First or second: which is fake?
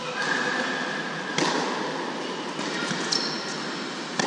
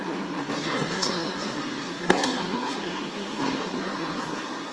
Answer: second